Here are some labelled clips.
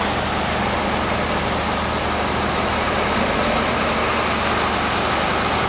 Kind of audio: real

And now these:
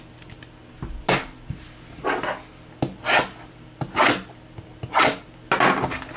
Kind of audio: real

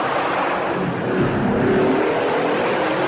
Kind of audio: real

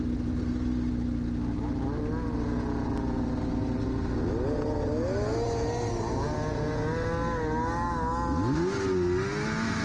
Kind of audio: real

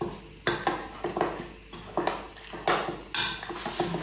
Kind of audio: real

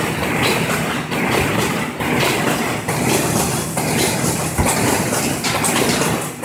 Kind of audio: real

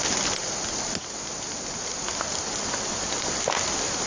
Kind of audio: real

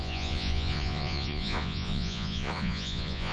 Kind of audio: fake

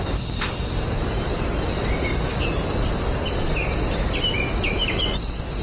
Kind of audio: real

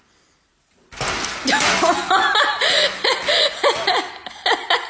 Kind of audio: real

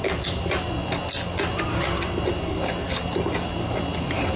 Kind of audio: real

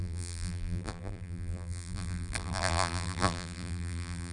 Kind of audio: fake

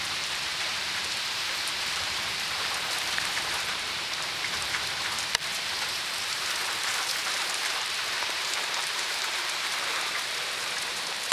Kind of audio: fake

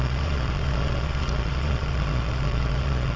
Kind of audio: fake